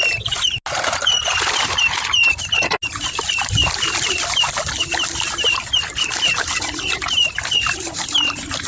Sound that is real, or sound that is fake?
real